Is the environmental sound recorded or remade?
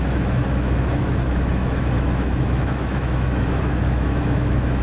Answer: remade